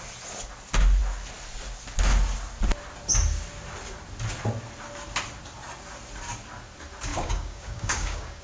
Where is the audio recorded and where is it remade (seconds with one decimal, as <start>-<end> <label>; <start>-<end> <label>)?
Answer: 0.0-7.1 recorded; 7.1-8.4 remade